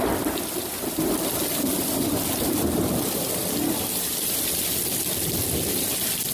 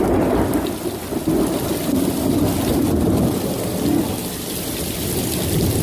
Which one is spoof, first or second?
first